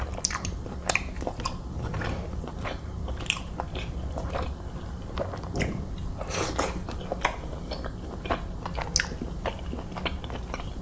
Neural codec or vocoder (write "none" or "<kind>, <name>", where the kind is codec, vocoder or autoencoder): none